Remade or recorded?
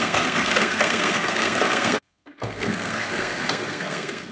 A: remade